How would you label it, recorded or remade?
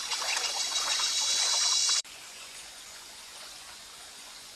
remade